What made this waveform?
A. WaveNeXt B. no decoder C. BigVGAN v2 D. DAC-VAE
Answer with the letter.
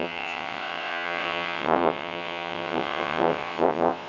A